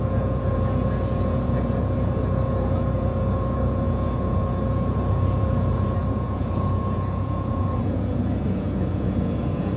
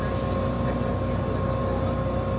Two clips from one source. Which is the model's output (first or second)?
first